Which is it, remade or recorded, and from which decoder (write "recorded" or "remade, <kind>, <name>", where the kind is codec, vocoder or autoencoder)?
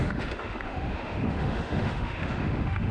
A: remade, autoencoder, DAC-VAE